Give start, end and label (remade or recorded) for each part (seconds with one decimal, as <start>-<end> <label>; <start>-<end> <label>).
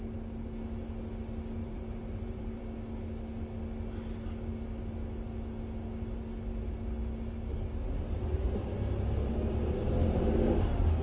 0.0-1.6 recorded; 1.6-2.6 remade; 2.6-11.0 recorded